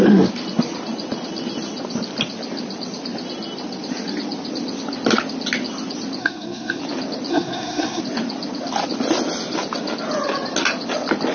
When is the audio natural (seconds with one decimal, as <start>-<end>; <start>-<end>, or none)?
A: 0.0-6.2; 6.8-7.3; 8.0-11.3